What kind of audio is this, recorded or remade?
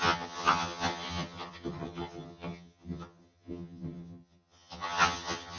remade